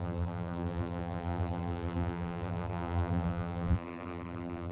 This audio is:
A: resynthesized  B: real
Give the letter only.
A